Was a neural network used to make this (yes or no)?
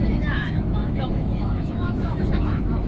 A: yes